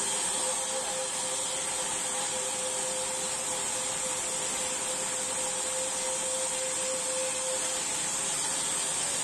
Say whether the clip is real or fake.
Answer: real